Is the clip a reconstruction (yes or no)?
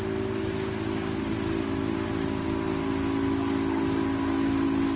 no